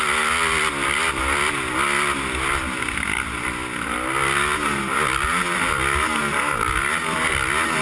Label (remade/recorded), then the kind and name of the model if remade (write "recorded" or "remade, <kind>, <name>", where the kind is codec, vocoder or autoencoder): recorded